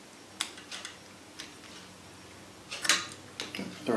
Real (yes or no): yes